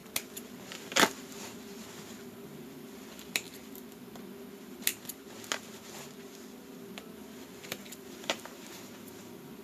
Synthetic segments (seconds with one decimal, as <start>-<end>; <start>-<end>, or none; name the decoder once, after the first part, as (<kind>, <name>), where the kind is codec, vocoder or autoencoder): 7.8-9.2 (vocoder, BigVGAN v2)